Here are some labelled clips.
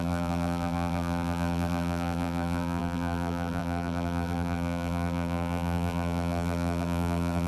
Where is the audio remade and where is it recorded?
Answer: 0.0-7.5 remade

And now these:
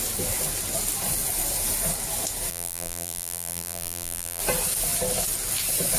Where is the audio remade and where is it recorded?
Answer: 0.0-2.5 recorded; 2.5-4.4 remade; 4.4-6.0 recorded

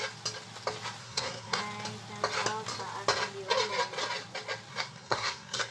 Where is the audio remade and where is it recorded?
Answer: 0.0-1.0 recorded; 1.0-1.6 remade; 1.6-4.7 recorded; 4.7-5.7 remade

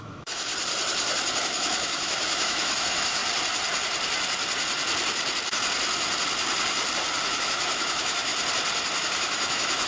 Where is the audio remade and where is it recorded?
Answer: 0.0-0.5 remade; 0.5-1.4 recorded; 1.4-3.2 remade; 3.2-7.4 recorded; 7.4-8.3 remade; 8.3-9.0 recorded; 9.0-9.9 remade

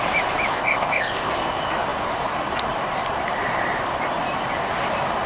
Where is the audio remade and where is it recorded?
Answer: 0.0-0.5 recorded; 0.5-1.3 remade; 1.3-5.3 recorded

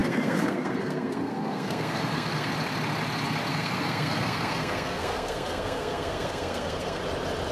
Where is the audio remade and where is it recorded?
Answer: 0.0-2.5 remade; 2.5-3.5 recorded; 3.5-7.0 remade; 7.0-7.5 recorded

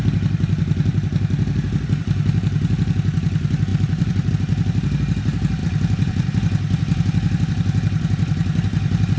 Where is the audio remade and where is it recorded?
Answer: 0.0-3.7 recorded; 3.7-4.3 remade; 4.3-5.6 recorded; 5.6-9.2 remade